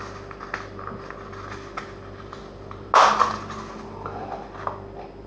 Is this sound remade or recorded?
recorded